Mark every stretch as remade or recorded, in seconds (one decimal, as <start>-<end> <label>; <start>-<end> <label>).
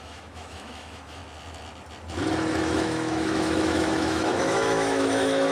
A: 0.0-1.2 remade; 1.2-2.5 recorded; 2.5-5.5 remade